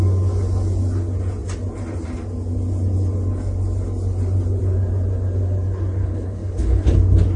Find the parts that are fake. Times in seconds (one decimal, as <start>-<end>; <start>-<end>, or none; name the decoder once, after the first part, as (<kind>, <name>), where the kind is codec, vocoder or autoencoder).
6.0-7.0 (codec, HILCodec)